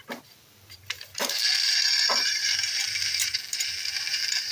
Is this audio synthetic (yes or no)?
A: yes